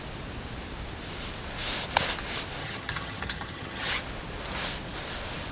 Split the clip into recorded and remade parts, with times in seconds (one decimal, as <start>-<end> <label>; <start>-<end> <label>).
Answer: 0.0-2.6 recorded; 2.6-3.9 remade; 3.9-5.5 recorded